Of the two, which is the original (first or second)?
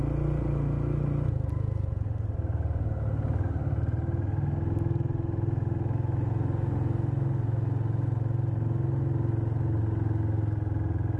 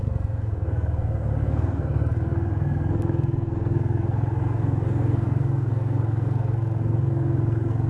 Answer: first